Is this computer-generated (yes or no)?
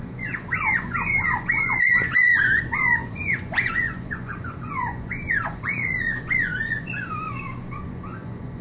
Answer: yes